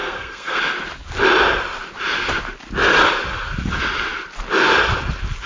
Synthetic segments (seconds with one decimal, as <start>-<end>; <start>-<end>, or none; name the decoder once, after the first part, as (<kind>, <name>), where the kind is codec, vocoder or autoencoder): 0.0-0.6 (codec, SNAC)